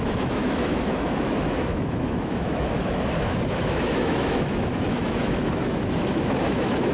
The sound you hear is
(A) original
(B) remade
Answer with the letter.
B